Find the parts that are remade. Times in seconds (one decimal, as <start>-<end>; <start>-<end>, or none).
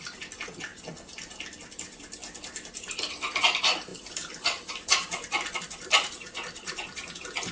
0.0-0.7; 1.6-2.2; 2.7-3.9; 5.6-7.5